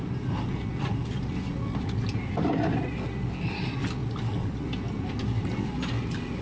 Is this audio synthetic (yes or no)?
no